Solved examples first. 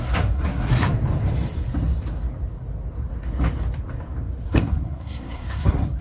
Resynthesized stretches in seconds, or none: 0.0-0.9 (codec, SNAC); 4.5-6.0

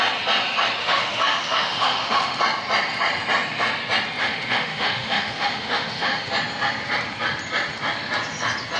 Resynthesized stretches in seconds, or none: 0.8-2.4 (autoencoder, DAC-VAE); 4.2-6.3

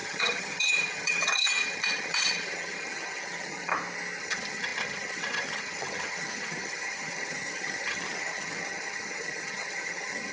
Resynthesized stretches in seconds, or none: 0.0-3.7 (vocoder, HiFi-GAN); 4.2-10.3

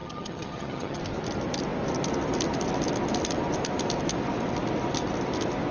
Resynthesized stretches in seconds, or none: 0.0-1.0 (vocoder, HiFi-GAN)

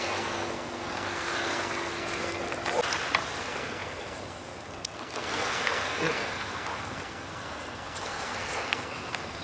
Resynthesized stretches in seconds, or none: 0.0-2.4 (codec, SNAC); 3.4-9.4

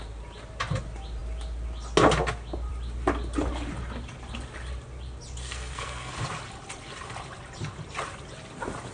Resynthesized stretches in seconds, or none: 5.4-6.1 (codec, SNAC)